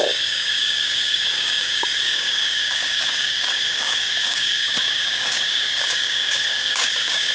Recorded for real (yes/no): no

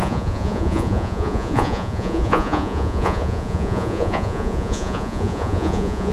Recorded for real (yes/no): no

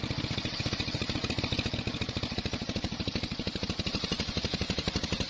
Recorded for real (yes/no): yes